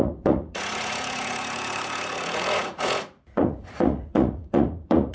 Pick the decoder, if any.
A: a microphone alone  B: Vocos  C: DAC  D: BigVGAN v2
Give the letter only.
B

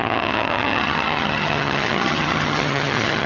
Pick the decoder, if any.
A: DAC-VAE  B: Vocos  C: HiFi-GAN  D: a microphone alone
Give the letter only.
C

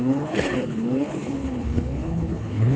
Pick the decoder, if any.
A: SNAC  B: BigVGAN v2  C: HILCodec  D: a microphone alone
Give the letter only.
C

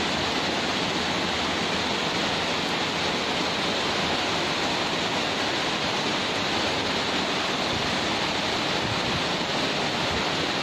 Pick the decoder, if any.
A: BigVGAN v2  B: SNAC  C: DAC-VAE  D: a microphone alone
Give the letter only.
D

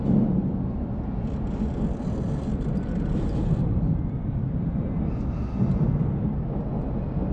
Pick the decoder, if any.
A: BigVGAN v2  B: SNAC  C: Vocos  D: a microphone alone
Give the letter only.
D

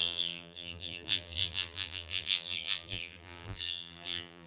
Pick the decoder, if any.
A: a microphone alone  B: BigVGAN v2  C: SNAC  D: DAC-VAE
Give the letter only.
B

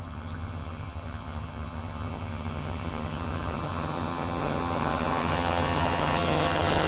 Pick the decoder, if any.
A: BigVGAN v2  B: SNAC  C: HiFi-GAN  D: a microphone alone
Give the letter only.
C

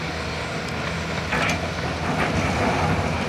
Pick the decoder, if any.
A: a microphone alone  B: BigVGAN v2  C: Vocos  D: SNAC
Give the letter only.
A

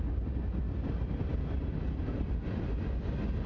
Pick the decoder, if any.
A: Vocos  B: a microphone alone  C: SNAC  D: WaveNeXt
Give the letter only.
B